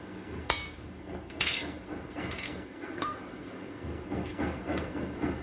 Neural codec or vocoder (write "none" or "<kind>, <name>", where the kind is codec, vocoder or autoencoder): codec, SNAC